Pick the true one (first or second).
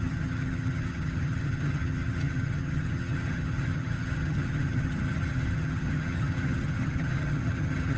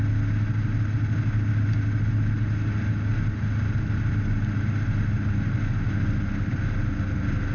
second